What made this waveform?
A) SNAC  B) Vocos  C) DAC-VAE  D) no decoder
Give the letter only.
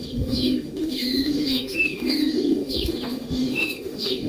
C